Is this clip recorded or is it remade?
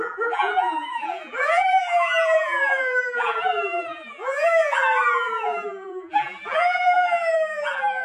remade